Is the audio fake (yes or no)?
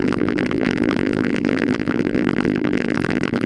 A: yes